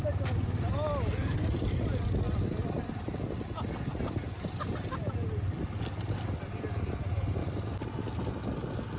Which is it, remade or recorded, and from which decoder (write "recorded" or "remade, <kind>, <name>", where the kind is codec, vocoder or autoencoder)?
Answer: recorded